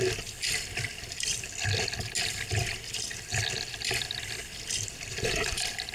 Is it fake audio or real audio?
real